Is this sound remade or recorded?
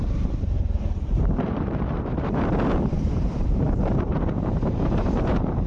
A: remade